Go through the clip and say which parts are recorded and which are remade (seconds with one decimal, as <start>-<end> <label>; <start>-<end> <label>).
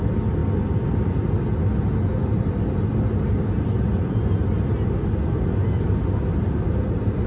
0.0-7.3 recorded